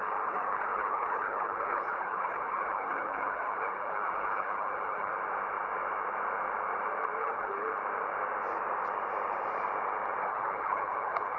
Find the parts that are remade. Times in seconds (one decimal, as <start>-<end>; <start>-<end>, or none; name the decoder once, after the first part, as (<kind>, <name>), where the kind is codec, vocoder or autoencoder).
0.0-5.1 (codec, HILCodec); 7.2-7.7; 10.2-11.4